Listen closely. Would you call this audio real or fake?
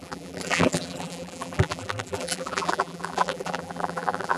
fake